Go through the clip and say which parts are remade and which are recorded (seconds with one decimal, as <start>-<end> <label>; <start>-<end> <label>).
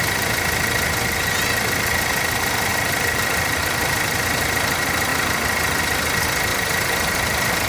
0.0-2.7 recorded; 2.7-3.6 remade; 3.6-5.1 recorded; 5.1-5.8 remade; 5.8-6.5 recorded; 6.5-7.7 remade